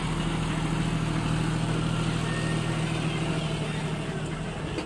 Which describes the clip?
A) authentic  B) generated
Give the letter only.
A